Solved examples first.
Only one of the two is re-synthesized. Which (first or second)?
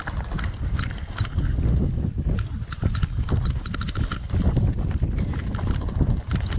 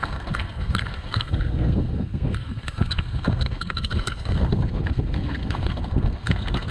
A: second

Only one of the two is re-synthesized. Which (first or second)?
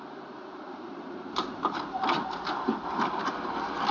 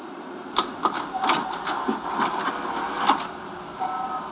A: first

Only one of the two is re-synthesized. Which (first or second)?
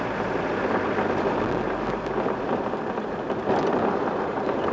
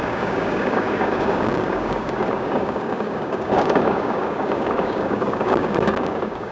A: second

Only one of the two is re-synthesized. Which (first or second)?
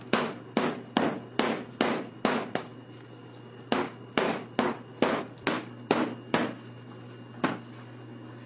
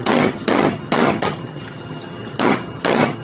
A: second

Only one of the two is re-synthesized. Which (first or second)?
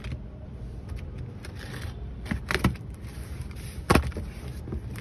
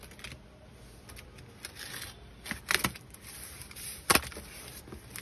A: first